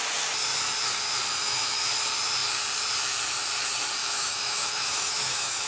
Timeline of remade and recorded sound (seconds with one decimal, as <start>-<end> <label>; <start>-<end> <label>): 0.0-1.3 recorded; 1.3-1.9 remade; 1.9-4.0 recorded; 4.0-5.7 remade